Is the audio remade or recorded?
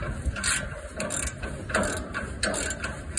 recorded